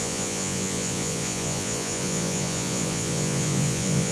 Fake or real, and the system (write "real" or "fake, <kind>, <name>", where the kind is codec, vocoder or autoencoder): fake, vocoder, Vocos